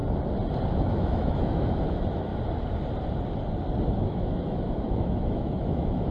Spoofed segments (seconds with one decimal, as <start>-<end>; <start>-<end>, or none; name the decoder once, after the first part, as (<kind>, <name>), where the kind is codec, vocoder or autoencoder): 0.7-2.3 (autoencoder, DAC-VAE); 3.9-6.1